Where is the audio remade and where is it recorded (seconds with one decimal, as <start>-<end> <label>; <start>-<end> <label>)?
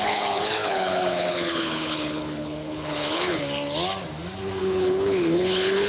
0.0-3.4 remade; 3.4-4.6 recorded; 4.6-5.9 remade